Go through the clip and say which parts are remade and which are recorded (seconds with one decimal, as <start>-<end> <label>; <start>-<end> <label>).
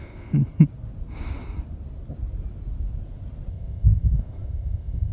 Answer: 0.0-0.4 remade; 0.4-3.5 recorded; 3.5-5.1 remade